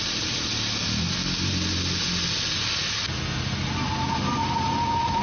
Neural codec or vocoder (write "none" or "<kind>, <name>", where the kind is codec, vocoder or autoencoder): none